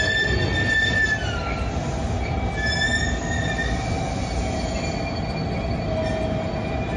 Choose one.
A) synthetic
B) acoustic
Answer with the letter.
B